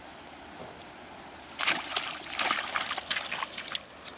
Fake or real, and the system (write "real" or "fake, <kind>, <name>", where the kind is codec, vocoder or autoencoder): real